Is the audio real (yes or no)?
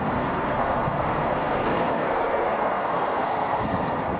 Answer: no